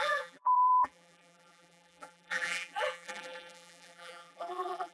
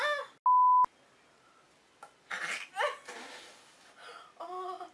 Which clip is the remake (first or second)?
first